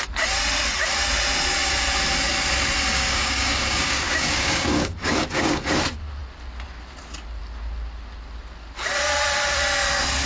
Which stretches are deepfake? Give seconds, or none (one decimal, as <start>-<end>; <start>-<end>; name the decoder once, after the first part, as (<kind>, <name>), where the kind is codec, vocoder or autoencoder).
2.9-5.6 (codec, DAC)